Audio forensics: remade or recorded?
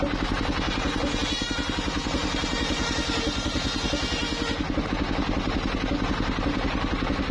recorded